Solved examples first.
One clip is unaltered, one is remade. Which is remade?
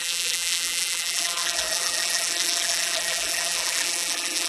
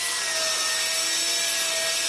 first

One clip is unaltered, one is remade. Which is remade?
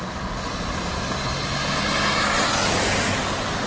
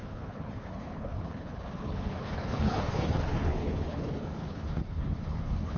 second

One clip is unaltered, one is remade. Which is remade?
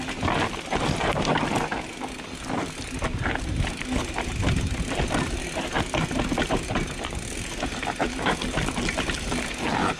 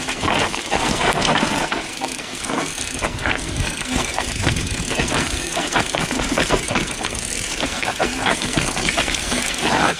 second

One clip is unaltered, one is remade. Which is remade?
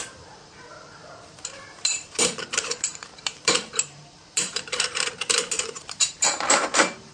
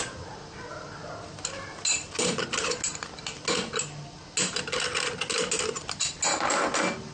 first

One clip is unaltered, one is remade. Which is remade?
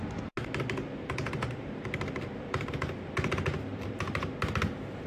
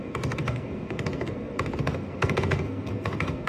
second